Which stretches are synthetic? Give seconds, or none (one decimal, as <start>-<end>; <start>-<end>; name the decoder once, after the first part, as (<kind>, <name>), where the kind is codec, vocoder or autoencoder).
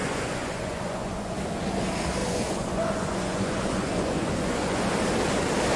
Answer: 0.0-1.4 (vocoder, Vocos); 2.2-4.9